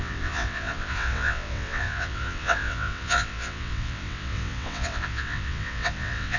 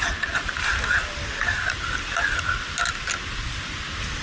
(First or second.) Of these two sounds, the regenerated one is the first